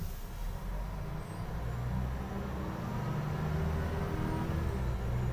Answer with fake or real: real